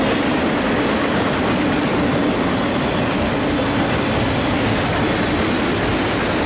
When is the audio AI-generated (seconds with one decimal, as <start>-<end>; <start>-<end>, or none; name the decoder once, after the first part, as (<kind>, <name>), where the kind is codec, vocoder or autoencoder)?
none